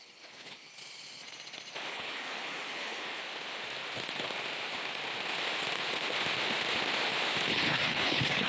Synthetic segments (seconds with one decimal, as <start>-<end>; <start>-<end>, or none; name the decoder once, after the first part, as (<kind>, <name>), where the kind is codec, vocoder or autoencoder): 0.0-0.7 (codec, HILCodec); 1.9-3.2; 7.5-8.5